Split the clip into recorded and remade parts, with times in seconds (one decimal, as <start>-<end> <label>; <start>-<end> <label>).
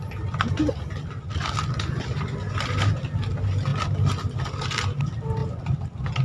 0.0-6.2 recorded